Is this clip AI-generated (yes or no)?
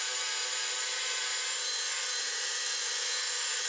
yes